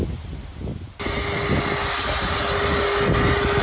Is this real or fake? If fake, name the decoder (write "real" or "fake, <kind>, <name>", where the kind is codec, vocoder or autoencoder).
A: real